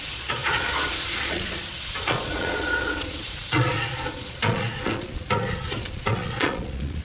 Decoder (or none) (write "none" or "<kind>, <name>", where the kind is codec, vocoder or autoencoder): vocoder, Vocos